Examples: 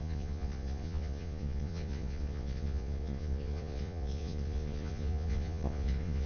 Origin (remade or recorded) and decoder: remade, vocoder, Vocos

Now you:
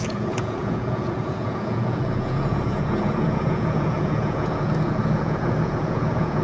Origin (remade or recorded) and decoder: remade, vocoder, Vocos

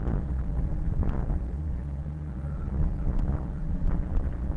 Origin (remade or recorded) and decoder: remade, vocoder, Vocos